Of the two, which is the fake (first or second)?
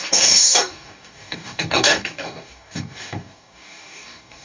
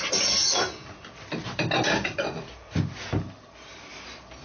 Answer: first